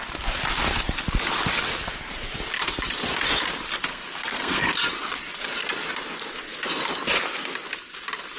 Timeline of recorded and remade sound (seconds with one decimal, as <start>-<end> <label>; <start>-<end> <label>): 0.0-3.9 recorded; 3.9-4.7 remade; 4.7-8.4 recorded